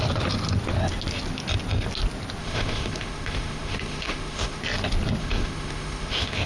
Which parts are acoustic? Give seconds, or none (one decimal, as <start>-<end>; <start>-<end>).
0.0-2.4; 4.6-5.2